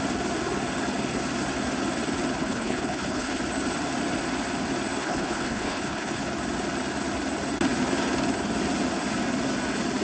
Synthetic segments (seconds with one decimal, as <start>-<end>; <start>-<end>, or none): 2.4-3.4; 5.0-6.2